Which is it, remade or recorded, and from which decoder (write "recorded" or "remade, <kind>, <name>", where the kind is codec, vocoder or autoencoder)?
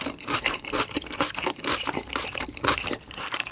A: remade, vocoder, BigVGAN v2